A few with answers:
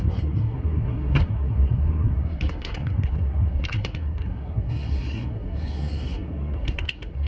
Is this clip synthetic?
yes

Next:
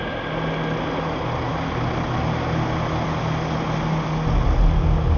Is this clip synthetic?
no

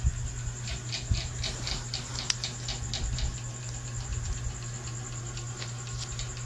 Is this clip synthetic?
no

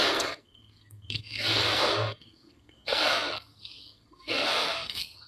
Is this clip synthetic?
yes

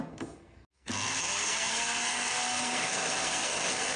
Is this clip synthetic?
yes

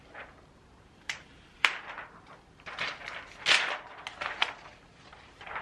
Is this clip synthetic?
no